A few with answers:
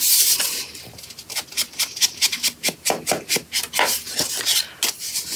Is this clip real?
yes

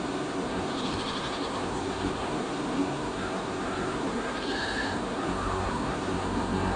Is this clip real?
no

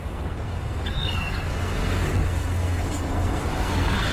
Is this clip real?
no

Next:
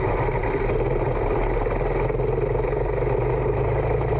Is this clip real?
yes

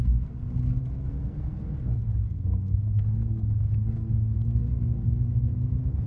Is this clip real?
no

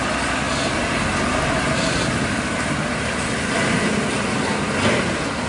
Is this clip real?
yes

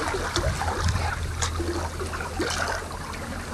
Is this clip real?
yes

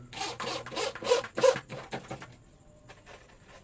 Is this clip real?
yes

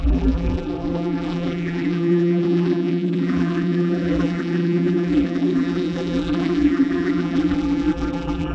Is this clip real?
no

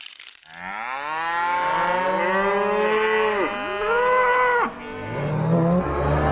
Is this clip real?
yes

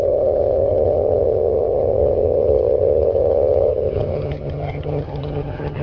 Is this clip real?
no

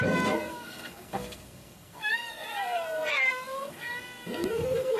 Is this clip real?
no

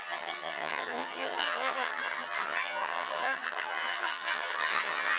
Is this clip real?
no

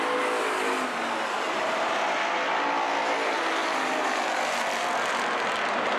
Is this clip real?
yes